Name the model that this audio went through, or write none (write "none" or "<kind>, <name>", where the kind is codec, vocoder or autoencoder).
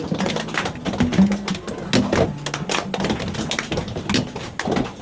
none